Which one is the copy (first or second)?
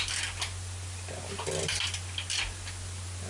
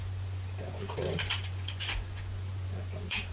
second